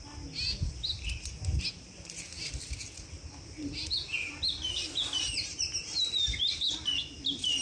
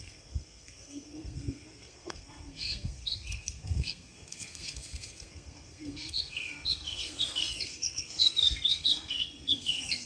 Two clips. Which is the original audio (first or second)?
first